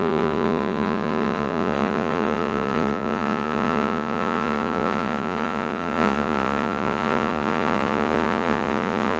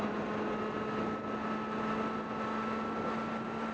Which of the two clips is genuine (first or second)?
second